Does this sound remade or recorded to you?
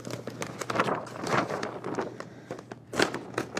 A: recorded